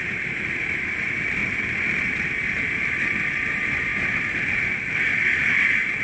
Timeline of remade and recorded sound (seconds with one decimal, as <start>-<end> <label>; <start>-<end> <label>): 0.0-1.4 remade; 1.4-3.5 recorded; 3.5-3.9 remade; 3.9-6.0 recorded

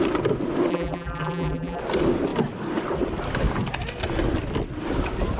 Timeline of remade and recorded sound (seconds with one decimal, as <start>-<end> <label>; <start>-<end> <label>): 0.0-0.7 recorded; 0.7-1.8 remade; 1.8-5.4 recorded

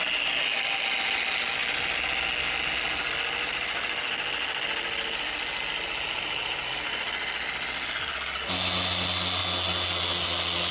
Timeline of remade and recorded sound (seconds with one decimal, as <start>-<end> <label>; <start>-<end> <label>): 0.0-10.7 recorded

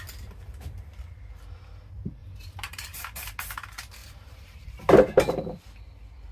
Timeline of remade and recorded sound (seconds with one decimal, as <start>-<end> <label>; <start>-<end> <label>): 0.0-2.2 recorded; 2.2-3.0 remade; 3.0-4.0 recorded; 4.0-5.4 remade; 5.4-6.3 recorded

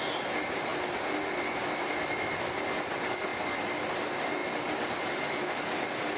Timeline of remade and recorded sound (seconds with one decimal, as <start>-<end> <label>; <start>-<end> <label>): 0.0-6.2 recorded

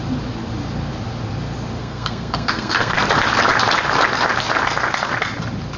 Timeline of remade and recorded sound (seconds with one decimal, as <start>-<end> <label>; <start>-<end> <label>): 0.0-1.8 recorded; 1.8-3.0 remade; 3.0-5.8 recorded